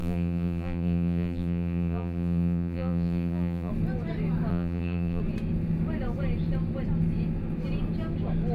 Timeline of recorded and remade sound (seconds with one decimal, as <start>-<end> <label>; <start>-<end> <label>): 0.0-3.7 remade; 3.7-4.5 recorded; 4.5-5.2 remade; 5.2-8.5 recorded